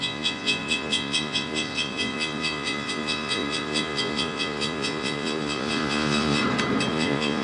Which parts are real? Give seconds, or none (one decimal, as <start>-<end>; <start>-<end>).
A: 6.4-6.9